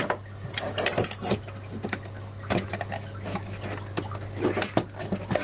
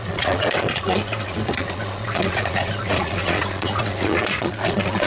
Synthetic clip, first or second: second